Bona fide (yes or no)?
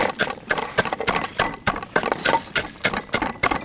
yes